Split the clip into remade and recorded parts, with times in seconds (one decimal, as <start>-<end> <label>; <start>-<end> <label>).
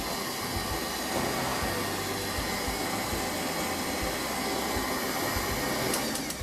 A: 0.0-6.4 recorded